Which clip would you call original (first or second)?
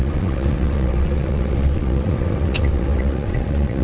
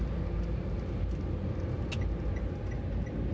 second